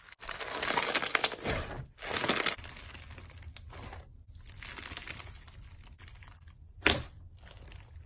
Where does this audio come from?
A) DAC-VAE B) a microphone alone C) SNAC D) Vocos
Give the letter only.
B